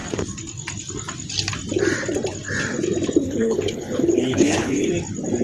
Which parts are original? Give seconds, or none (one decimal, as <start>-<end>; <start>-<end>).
0.0-3.2; 4.9-5.4